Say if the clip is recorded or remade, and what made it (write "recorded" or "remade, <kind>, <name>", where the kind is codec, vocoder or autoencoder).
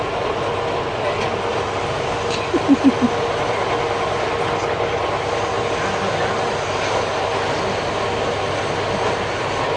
recorded